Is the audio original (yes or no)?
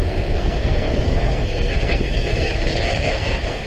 no